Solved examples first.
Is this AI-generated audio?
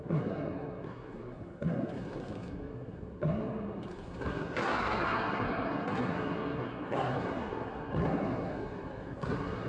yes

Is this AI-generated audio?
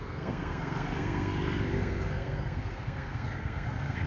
yes